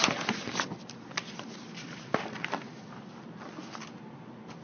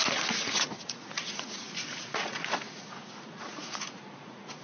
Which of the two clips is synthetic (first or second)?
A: second